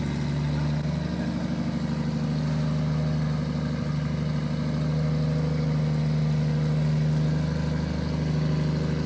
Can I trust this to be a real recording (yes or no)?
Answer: yes